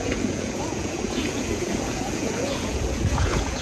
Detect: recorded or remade remade